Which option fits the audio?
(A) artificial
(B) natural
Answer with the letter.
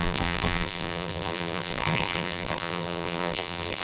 A